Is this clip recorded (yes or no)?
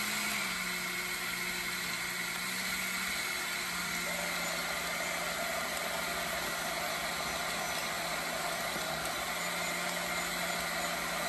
yes